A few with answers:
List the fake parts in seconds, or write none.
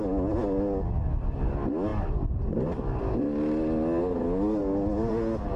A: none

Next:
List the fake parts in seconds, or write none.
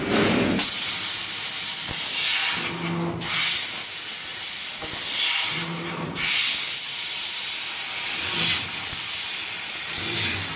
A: 4.3-6.3 (vocoder, BigVGAN v2)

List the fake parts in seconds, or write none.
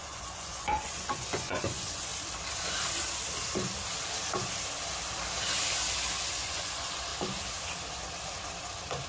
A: 0.0-2.1 (vocoder, Vocos); 6.3-7.1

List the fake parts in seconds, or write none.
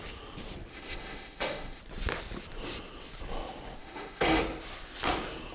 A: 0.7-1.8 (autoencoder, DAC-VAE); 3.8-4.4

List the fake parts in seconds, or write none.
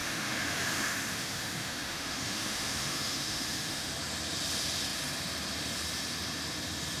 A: 0.0-3.9 (autoencoder, DAC-VAE)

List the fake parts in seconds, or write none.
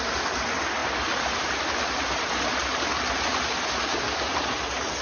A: none